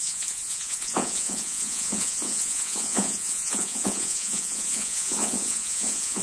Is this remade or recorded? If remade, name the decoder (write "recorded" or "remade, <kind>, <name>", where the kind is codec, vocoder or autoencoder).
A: remade, vocoder, Vocos